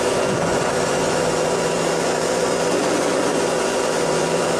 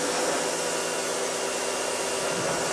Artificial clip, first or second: first